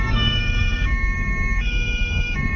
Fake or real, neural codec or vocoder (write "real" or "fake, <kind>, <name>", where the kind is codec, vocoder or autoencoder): fake, codec, DAC